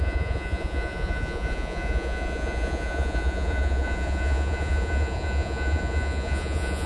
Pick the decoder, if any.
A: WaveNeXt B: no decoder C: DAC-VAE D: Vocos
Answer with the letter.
D